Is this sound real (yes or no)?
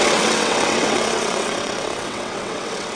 no